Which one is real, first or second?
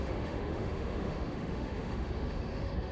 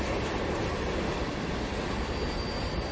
second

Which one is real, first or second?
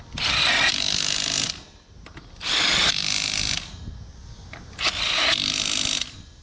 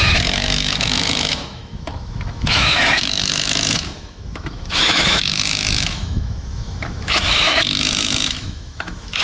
first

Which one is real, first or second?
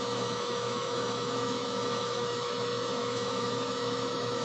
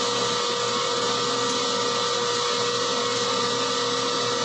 second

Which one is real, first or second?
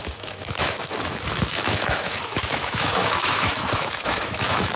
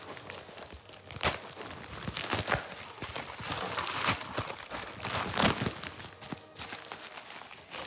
second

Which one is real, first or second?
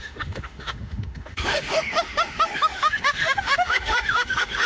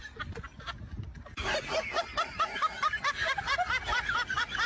second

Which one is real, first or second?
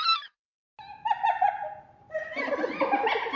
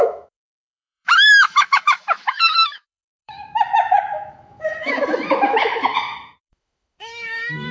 first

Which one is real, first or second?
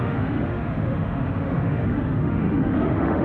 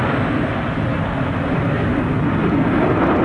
second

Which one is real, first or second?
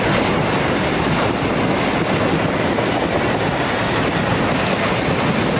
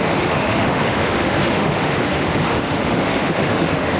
first